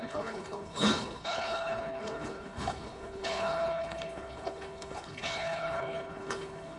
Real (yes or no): no